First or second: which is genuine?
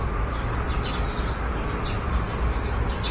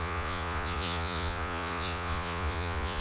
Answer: first